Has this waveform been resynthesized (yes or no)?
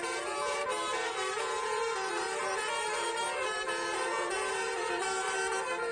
yes